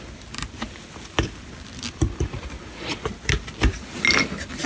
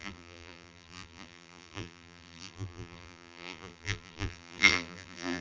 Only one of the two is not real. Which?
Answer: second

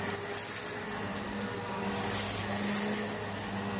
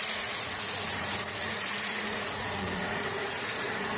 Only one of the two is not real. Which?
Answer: second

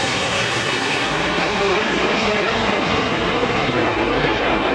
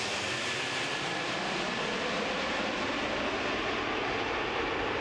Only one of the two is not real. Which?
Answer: first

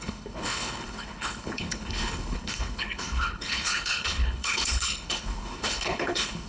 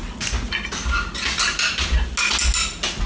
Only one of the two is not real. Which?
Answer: first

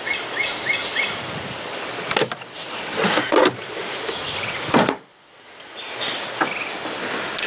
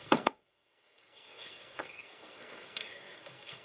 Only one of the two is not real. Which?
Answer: second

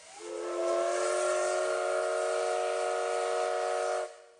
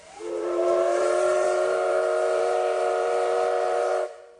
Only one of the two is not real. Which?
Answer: second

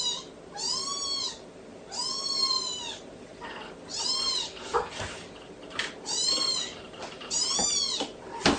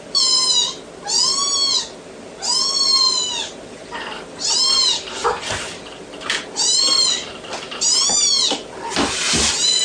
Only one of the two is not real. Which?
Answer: first